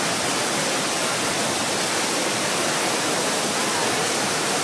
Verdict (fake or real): real